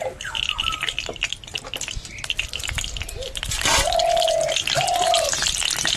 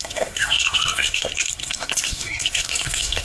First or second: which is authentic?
first